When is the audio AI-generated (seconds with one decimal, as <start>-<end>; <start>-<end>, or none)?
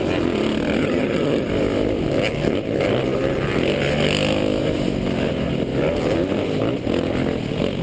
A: 0.8-1.5